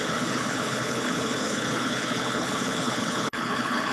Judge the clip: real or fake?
fake